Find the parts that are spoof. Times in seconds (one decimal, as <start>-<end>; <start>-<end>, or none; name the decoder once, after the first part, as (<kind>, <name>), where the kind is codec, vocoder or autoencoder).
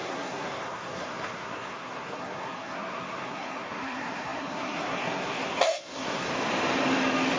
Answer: 0.0-6.3 (codec, SNAC)